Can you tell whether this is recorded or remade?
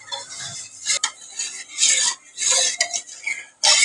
recorded